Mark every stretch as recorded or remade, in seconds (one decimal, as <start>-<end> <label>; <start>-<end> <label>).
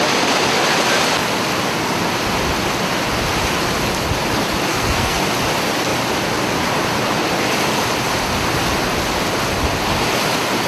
0.0-4.7 recorded; 4.7-5.2 remade; 5.2-10.7 recorded